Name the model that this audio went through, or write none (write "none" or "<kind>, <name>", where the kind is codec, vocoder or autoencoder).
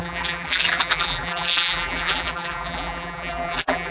vocoder, BigVGAN v2